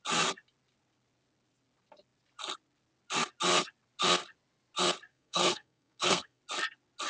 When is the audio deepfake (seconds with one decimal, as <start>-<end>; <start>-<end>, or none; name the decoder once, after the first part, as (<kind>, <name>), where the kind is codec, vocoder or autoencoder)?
5.1-6.4 (codec, SNAC)